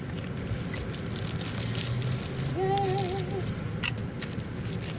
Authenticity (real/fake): real